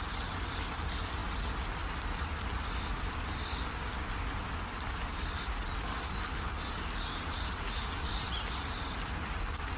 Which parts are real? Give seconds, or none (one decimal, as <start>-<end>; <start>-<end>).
0.0-9.8